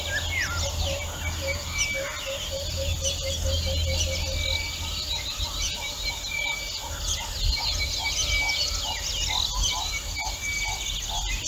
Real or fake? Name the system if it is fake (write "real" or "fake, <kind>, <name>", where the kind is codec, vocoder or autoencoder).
real